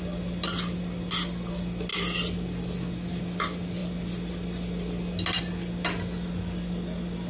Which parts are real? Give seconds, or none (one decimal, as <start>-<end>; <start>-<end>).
0.0-7.3